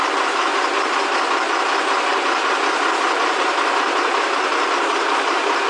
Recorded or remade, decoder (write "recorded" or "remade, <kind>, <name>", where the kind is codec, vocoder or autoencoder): recorded